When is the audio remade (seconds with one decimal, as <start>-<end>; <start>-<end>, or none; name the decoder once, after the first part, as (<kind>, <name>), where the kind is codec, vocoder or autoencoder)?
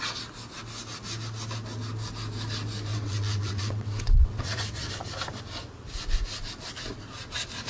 2.9-4.9 (vocoder, WaveNeXt)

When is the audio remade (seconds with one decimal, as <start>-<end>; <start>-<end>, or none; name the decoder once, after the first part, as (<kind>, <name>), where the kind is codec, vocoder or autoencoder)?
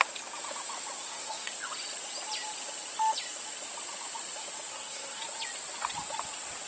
1.0-1.5 (codec, SNAC); 4.7-5.2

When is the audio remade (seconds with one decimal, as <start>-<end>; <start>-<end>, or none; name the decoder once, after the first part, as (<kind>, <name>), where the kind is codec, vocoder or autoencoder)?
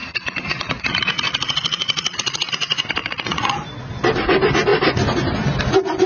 0.0-2.5 (vocoder, Vocos); 3.0-3.5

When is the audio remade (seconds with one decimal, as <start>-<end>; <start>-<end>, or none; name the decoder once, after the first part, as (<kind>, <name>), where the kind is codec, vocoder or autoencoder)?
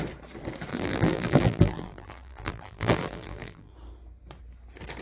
0.7-3.7 (vocoder, BigVGAN v2)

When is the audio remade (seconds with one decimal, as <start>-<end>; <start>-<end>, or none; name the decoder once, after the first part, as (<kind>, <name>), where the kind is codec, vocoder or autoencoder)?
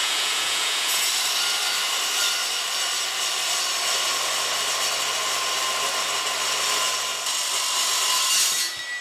0.0-1.1 (vocoder, Vocos)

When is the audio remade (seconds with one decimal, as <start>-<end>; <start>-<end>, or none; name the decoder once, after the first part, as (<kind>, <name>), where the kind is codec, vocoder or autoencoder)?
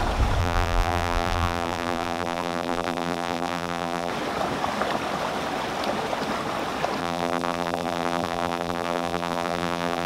0.4-4.1 (vocoder, BigVGAN v2); 7.0-10.1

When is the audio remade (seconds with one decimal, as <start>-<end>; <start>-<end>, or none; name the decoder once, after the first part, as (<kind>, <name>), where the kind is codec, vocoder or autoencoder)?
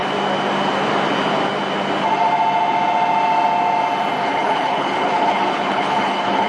4.2-6.5 (codec, HILCodec)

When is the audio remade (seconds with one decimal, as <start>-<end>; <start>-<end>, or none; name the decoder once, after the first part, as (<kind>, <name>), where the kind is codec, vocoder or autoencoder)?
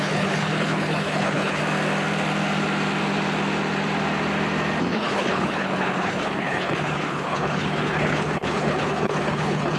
0.0-1.6 (codec, HILCodec); 4.8-9.8